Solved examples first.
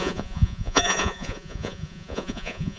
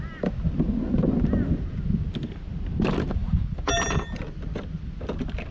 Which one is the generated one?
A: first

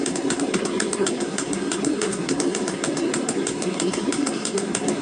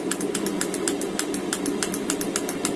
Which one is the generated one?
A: first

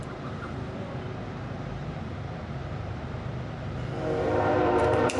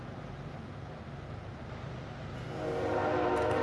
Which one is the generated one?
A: first